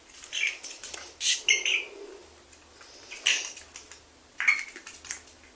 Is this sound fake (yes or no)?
no